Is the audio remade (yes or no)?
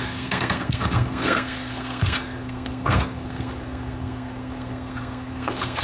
yes